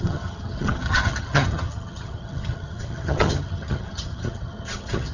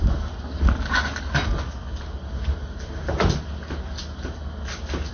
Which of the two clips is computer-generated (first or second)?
first